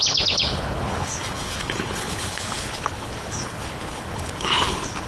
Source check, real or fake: fake